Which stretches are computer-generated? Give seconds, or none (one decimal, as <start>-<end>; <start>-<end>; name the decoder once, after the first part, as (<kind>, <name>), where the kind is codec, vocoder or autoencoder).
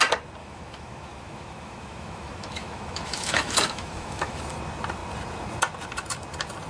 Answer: 0.4-4.4 (autoencoder, DAC-VAE)